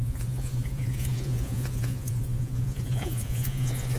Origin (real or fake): fake